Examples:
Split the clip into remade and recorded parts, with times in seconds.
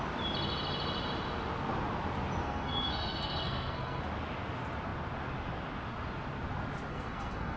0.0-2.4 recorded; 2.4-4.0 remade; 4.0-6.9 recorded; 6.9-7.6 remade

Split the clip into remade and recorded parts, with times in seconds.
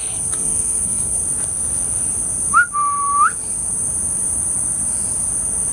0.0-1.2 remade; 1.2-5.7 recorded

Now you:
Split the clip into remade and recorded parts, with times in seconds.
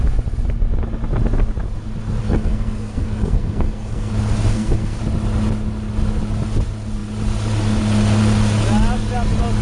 0.0-2.2 recorded; 2.2-4.1 remade; 4.1-4.5 recorded; 4.5-5.0 remade; 5.0-9.6 recorded